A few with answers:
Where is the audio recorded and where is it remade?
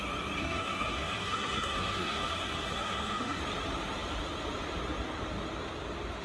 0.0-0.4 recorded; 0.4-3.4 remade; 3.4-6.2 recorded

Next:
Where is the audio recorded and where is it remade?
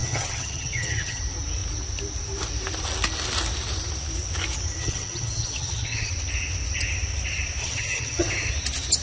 0.0-1.2 remade; 1.2-4.8 recorded; 4.8-6.1 remade; 6.1-7.6 recorded; 7.6-8.5 remade; 8.5-9.0 recorded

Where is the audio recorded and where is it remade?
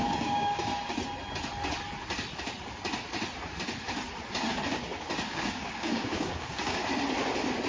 0.0-0.7 remade; 0.7-5.3 recorded; 5.3-6.8 remade; 6.8-7.7 recorded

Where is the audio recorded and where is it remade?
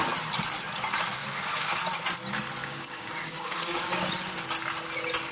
0.0-1.2 recorded; 1.2-1.8 remade; 1.8-2.6 recorded; 2.6-3.9 remade; 3.9-5.3 recorded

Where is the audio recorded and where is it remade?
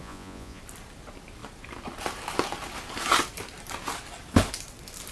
0.0-0.6 remade; 0.6-5.1 recorded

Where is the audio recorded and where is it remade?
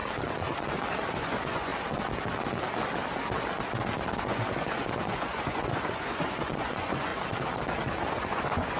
0.0-1.1 recorded; 1.1-1.7 remade; 1.7-4.2 recorded; 4.2-7.1 remade; 7.1-8.1 recorded; 8.1-8.8 remade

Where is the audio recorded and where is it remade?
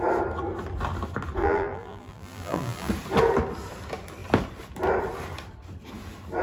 0.0-1.4 recorded; 1.4-2.9 remade; 2.9-6.4 recorded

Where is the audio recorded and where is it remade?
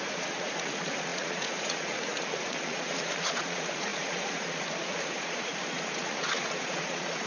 0.0-7.3 remade